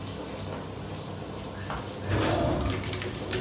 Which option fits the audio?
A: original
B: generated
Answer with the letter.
A